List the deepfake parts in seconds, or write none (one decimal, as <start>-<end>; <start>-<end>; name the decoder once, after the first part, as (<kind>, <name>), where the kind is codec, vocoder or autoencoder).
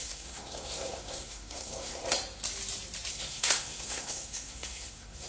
0.0-2.0 (codec, SNAC); 3.1-5.3